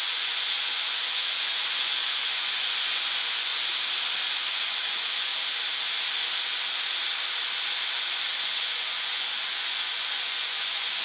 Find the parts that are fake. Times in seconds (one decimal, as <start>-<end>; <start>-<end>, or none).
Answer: 0.0-3.5; 4.5-5.3; 8.4-11.0